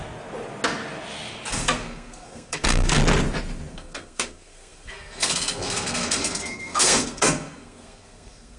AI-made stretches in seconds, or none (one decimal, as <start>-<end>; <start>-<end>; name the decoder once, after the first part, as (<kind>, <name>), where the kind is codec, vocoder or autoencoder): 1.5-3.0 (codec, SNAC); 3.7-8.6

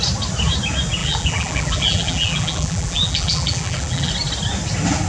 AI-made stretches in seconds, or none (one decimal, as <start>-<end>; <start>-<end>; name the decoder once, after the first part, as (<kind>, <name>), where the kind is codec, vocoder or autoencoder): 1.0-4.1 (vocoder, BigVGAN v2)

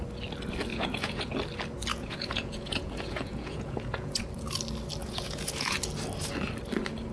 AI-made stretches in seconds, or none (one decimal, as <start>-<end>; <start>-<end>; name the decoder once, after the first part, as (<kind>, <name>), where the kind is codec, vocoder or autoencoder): 0.7-1.3 (vocoder, Vocos); 1.9-4.2; 5.0-5.8